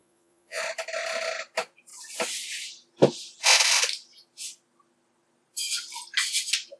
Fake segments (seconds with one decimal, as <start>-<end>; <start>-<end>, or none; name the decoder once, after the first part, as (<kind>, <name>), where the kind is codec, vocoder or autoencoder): 0.0-0.6 (vocoder, Vocos)